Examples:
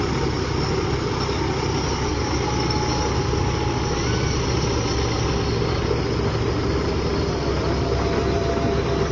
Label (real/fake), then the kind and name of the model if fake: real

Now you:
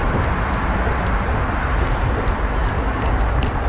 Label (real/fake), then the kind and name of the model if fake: real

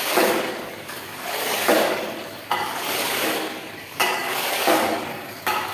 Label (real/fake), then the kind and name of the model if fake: fake, codec, DAC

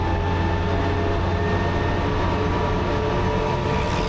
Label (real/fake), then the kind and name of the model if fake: real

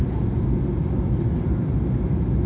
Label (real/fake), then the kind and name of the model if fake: real